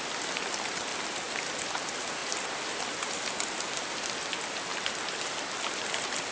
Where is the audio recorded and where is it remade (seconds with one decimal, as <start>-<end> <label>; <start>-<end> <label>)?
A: 0.0-6.3 recorded